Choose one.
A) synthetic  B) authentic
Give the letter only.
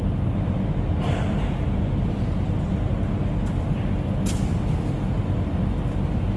B